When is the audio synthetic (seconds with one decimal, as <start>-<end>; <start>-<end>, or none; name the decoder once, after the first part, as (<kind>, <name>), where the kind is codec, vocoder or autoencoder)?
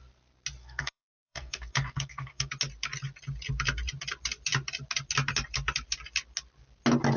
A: 0.6-2.5 (codec, SNAC)